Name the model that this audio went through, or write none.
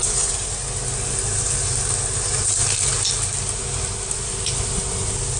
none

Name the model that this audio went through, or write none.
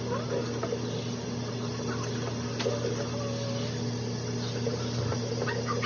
none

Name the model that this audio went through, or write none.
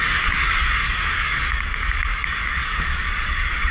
codec, DAC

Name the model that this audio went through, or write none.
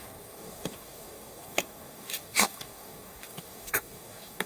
codec, DAC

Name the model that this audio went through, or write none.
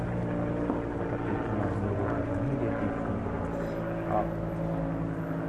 none